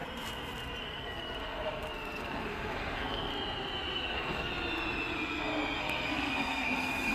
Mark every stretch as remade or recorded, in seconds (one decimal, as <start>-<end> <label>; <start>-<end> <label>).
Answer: 0.0-0.8 recorded; 0.8-3.3 remade; 3.3-4.1 recorded; 4.1-4.5 remade; 4.5-5.8 recorded; 5.8-7.1 remade